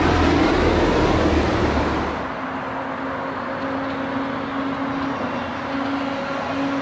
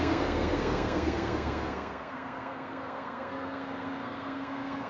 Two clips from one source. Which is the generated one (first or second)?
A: second